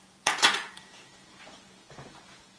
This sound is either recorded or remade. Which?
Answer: remade